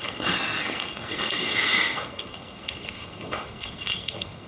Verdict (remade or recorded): remade